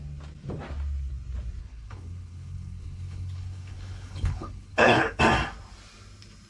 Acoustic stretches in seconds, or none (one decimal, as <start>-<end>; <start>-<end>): 0.0-1.6; 5.2-6.5